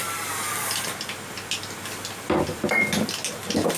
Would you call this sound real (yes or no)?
yes